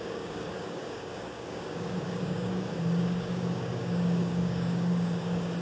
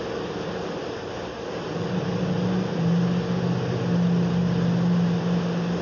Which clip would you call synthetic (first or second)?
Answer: first